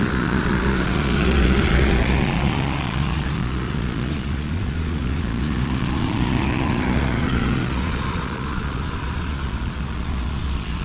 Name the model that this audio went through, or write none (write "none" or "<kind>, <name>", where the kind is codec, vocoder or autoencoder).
vocoder, Vocos